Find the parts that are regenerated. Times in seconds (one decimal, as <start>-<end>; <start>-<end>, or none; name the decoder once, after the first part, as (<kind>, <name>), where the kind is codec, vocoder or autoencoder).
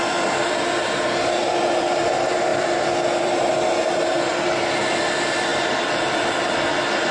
0.0-1.4 (vocoder, BigVGAN v2); 2.0-5.5